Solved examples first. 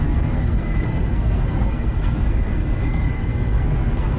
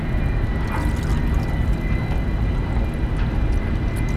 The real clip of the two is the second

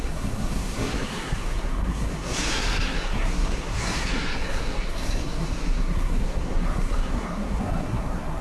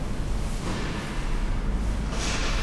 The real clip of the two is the second